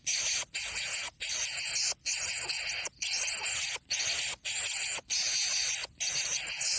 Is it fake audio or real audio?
real